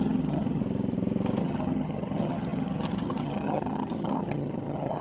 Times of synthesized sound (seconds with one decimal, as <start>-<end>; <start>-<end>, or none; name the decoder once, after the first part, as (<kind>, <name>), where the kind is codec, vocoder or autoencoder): 0.0-0.6 (vocoder, HiFi-GAN); 1.4-5.0